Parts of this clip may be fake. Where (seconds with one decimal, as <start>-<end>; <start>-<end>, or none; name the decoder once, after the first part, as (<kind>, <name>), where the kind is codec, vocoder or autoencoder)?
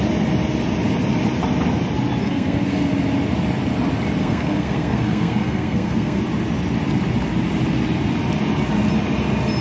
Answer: 2.2-2.8 (codec, SNAC); 4.2-6.2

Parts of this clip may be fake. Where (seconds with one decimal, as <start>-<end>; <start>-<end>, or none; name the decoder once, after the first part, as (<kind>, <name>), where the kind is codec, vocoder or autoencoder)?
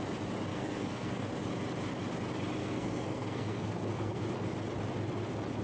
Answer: 0.5-1.3 (codec, SNAC); 2.6-4.2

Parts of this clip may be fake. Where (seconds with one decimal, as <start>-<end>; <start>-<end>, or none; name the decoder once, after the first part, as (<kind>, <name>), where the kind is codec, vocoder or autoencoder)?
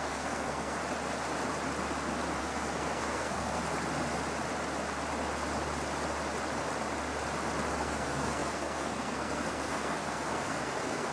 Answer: 0.0-0.8 (codec, SNAC); 2.4-3.6; 7.7-11.1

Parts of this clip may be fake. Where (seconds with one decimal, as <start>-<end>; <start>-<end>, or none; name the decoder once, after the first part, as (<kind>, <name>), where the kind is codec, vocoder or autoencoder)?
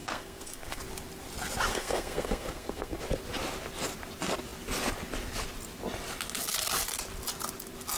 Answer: 0.0-0.8 (codec, SNAC); 1.7-3.0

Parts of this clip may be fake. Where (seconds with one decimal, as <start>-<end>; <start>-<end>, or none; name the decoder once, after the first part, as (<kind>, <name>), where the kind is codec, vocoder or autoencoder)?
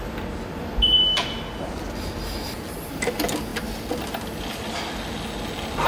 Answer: none